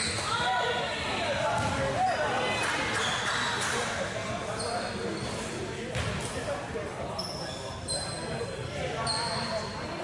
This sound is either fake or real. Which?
real